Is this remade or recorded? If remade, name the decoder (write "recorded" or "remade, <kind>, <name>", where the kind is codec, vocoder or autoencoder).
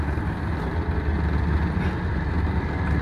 recorded